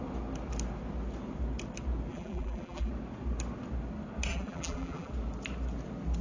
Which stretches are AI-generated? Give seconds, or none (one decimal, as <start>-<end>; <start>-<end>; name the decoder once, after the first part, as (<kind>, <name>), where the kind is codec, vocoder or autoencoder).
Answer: 2.1-2.9 (vocoder, BigVGAN v2); 4.3-5.1